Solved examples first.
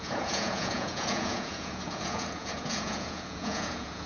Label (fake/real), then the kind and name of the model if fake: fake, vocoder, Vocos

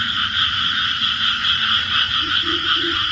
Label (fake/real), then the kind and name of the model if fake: fake, vocoder, Vocos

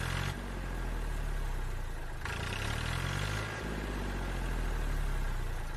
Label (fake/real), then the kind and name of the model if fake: real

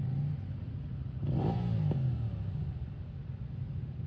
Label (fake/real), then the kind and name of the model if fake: real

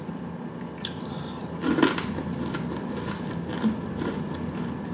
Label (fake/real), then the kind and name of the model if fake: real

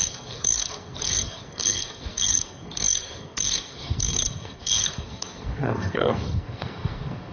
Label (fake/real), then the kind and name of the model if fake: fake, codec, SNAC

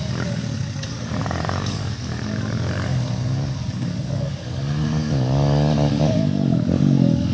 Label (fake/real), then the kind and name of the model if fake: fake, codec, DAC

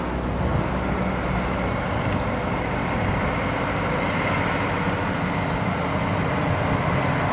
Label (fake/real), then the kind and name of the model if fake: real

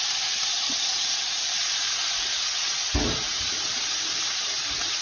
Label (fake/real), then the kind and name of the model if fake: real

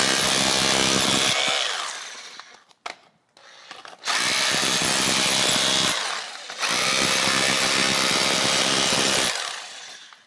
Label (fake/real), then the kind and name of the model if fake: real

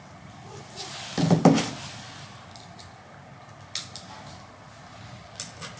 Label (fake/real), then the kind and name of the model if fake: real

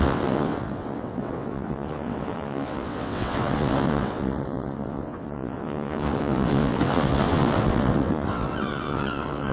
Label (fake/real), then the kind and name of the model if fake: fake, vocoder, WaveNeXt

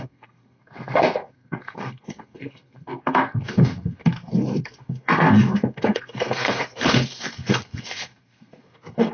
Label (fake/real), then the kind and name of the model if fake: fake, codec, SNAC